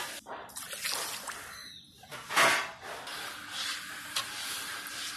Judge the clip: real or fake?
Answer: real